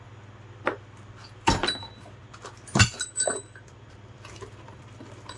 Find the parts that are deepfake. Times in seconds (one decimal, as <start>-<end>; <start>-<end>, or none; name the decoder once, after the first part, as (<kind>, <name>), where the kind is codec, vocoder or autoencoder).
2.2-5.4 (vocoder, BigVGAN v2)